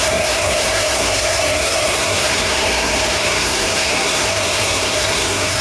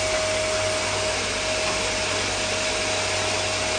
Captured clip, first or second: second